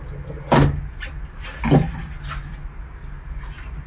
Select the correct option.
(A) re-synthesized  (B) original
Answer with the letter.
B